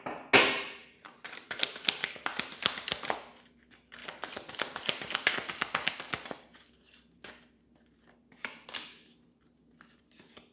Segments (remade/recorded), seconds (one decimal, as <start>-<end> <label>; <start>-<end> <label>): 0.0-10.5 recorded